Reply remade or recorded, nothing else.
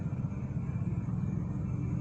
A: recorded